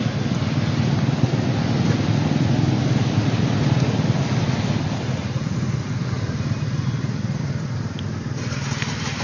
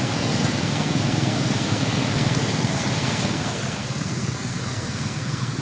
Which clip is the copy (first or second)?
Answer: second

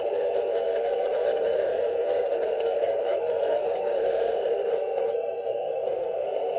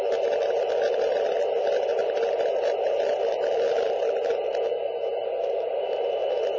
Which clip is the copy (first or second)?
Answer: first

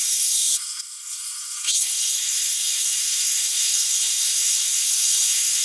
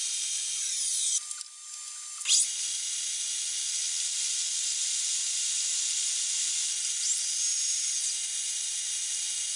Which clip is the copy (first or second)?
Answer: first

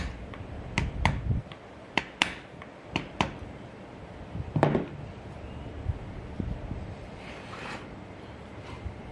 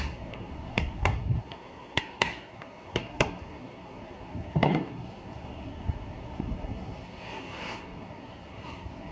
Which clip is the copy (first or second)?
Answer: second